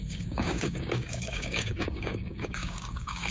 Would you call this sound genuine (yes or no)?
no